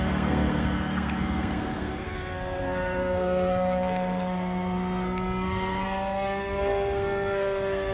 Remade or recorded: remade